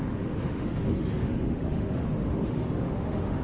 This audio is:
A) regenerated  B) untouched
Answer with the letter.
A